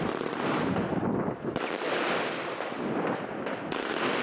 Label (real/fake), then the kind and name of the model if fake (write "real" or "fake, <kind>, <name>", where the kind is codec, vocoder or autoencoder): real